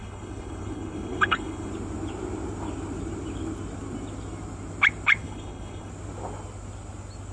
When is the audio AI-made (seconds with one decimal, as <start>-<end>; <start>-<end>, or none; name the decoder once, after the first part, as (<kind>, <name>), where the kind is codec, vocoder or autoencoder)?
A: 0.0-1.7 (codec, HILCodec); 5.2-5.9